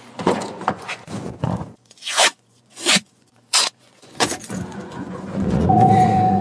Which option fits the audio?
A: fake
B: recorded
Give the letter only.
A